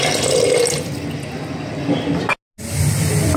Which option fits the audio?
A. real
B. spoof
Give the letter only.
A